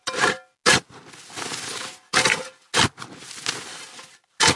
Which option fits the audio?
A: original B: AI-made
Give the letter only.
A